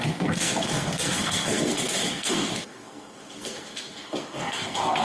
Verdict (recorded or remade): remade